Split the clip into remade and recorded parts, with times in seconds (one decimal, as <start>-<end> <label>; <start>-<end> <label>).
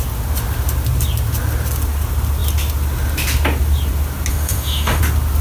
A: 0.0-4.3 recorded; 4.3-5.0 remade; 5.0-5.4 recorded